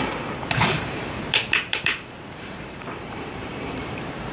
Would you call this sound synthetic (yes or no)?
yes